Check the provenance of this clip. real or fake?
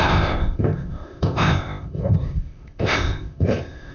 fake